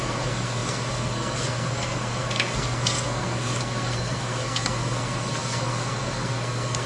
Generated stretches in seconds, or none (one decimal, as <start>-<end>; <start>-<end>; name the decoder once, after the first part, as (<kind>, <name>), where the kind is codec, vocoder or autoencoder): 0.0-6.9 (codec, SNAC)